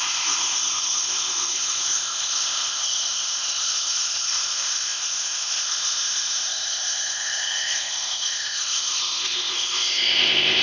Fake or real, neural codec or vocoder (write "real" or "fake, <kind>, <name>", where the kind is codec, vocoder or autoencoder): fake, codec, ZipCodec